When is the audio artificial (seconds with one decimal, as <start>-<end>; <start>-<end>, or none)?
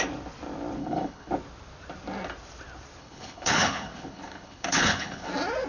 0.8-1.3; 3.0-5.3